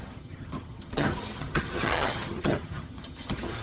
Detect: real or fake fake